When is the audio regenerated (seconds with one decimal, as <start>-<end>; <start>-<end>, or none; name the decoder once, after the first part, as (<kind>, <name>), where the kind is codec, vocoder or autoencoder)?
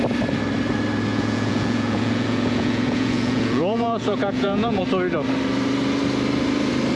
1.1-4.8 (vocoder, Vocos)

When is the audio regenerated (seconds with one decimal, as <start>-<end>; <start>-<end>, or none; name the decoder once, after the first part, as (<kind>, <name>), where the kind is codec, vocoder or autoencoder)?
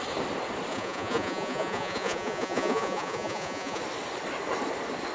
0.7-3.8 (vocoder, Vocos)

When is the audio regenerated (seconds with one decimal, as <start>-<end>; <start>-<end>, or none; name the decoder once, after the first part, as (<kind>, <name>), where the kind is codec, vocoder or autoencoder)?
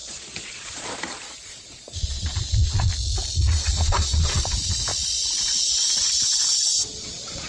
0.0-2.9 (vocoder, Vocos); 3.5-4.9; 5.4-7.5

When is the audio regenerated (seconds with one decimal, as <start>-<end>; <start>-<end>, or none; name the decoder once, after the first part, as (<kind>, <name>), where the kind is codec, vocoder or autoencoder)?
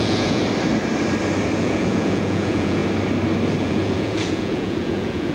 0.0-0.4 (vocoder, Vocos); 1.6-2.8; 3.6-5.3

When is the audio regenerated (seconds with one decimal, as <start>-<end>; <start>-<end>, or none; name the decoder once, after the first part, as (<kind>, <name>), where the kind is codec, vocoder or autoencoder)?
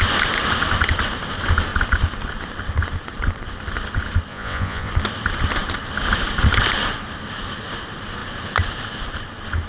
4.3-4.9 (vocoder, Vocos)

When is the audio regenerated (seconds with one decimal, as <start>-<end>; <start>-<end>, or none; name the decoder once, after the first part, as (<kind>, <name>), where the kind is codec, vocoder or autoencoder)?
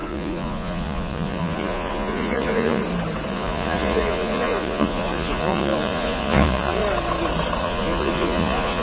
0.0-2.8 (vocoder, Vocos); 3.3-6.8; 7.6-8.8